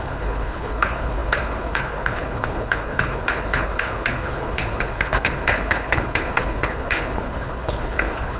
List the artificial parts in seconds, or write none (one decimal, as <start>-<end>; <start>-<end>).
0.0-8.4